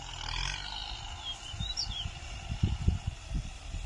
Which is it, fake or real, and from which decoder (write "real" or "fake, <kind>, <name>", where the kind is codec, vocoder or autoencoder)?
real